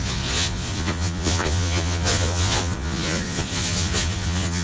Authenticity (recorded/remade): remade